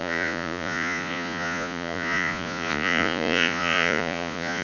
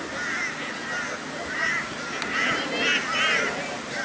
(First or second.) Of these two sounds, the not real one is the first